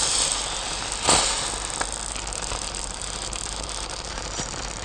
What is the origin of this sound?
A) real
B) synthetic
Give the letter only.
A